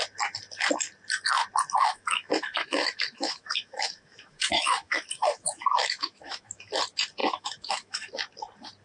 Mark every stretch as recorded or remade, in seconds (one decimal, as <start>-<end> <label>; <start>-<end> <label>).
0.0-1.8 recorded; 1.8-6.7 remade; 6.7-7.2 recorded; 7.2-8.1 remade; 8.1-8.8 recorded

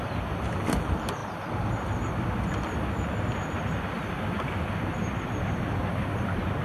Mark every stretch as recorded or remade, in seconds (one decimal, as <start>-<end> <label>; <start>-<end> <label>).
0.0-6.6 recorded

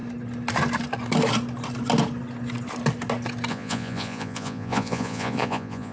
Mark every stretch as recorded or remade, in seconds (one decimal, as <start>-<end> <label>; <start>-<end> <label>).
0.0-3.5 recorded; 3.5-5.9 remade

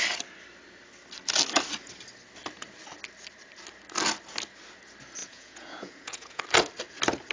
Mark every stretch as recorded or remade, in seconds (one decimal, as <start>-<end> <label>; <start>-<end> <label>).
0.0-5.2 recorded; 5.2-6.4 remade; 6.4-7.3 recorded

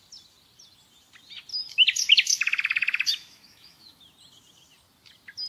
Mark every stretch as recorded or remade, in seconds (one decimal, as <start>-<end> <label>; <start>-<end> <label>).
0.0-1.5 recorded; 1.5-4.0 remade; 4.0-5.5 recorded

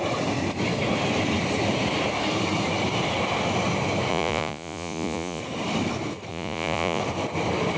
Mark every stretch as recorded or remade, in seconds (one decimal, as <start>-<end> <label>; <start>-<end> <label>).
0.0-4.1 recorded; 4.1-5.4 remade; 5.4-6.3 recorded; 6.3-7.0 remade; 7.0-7.8 recorded

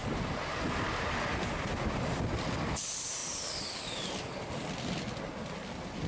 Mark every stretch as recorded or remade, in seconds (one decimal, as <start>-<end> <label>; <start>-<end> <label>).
0.0-6.1 recorded